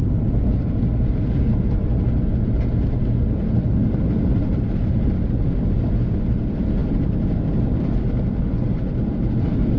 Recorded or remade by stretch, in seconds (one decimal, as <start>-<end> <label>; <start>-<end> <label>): 0.0-9.8 recorded